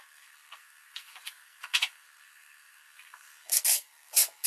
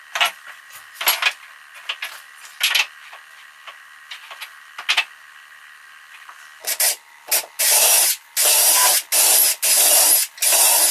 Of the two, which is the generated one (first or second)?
first